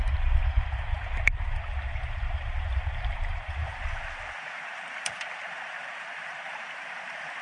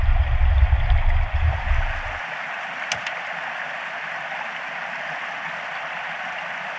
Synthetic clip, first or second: first